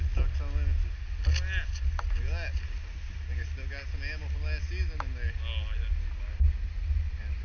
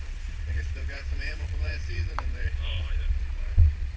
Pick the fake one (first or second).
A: second